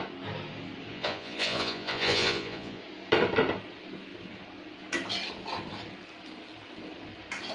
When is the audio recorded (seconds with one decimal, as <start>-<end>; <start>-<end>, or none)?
0.0-0.9; 2.8-7.5